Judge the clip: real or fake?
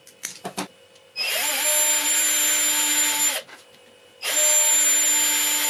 real